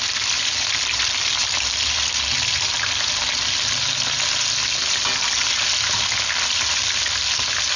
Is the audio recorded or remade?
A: recorded